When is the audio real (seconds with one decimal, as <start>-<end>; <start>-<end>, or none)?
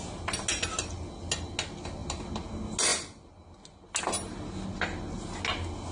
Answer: 0.0-5.9